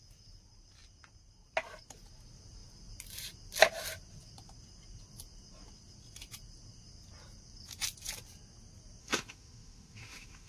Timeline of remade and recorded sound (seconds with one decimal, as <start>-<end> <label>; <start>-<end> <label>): 0.0-9.0 recorded; 9.0-10.5 remade